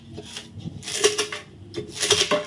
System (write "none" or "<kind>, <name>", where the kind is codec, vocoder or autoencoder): none